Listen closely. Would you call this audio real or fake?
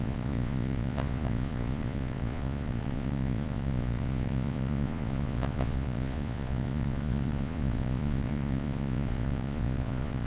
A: fake